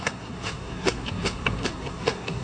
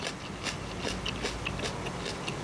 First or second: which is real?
second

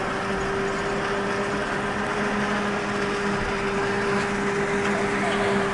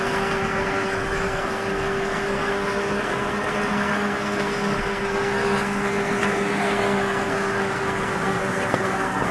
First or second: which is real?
first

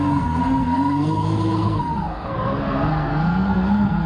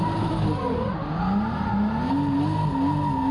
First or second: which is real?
second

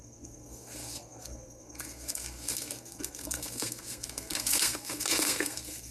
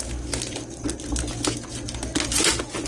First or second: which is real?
second